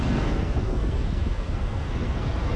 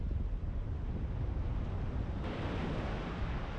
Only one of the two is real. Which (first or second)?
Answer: second